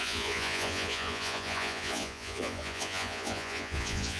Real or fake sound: fake